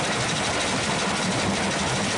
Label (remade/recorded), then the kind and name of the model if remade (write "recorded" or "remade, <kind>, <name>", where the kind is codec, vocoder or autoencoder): recorded